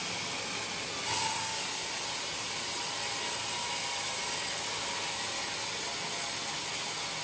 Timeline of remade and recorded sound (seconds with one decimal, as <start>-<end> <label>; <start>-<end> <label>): 0.0-7.2 recorded